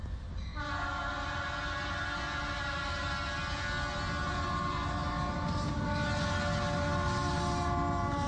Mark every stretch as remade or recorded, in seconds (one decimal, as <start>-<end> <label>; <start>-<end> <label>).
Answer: 0.0-8.3 recorded